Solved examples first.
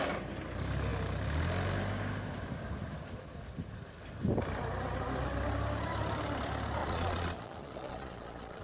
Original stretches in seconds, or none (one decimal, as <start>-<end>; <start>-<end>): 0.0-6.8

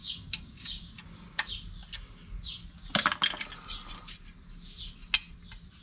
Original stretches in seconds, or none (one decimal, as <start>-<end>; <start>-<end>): 0.9-5.8

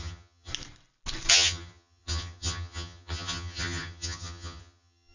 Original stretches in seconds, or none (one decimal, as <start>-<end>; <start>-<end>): 0.5-1.3

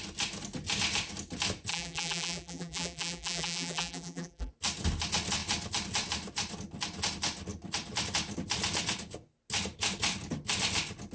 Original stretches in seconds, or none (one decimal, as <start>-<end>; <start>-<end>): 0.0-1.7; 4.5-11.1